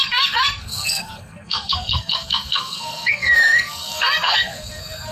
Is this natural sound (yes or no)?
no